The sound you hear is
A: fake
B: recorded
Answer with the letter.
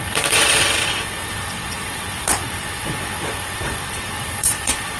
A